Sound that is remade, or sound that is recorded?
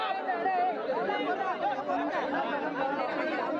recorded